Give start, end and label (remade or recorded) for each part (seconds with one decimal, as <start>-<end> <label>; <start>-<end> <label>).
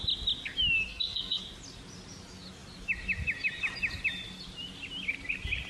0.0-0.9 recorded; 0.9-1.4 remade; 1.4-5.7 recorded